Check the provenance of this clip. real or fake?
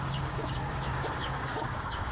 fake